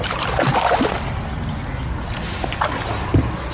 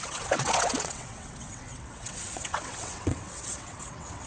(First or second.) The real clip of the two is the first